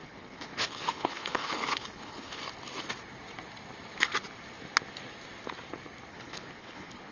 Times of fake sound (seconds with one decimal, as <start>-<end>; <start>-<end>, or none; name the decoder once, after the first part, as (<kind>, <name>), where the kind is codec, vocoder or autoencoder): 0.0-2.4 (codec, HILCodec); 6.1-7.1